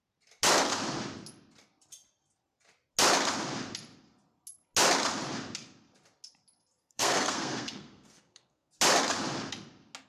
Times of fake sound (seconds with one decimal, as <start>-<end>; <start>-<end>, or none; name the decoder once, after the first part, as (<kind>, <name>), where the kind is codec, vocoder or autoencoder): 6.8-8.7 (codec, SNAC)